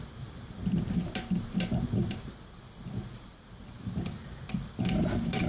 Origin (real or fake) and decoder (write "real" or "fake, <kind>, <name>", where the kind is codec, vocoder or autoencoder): real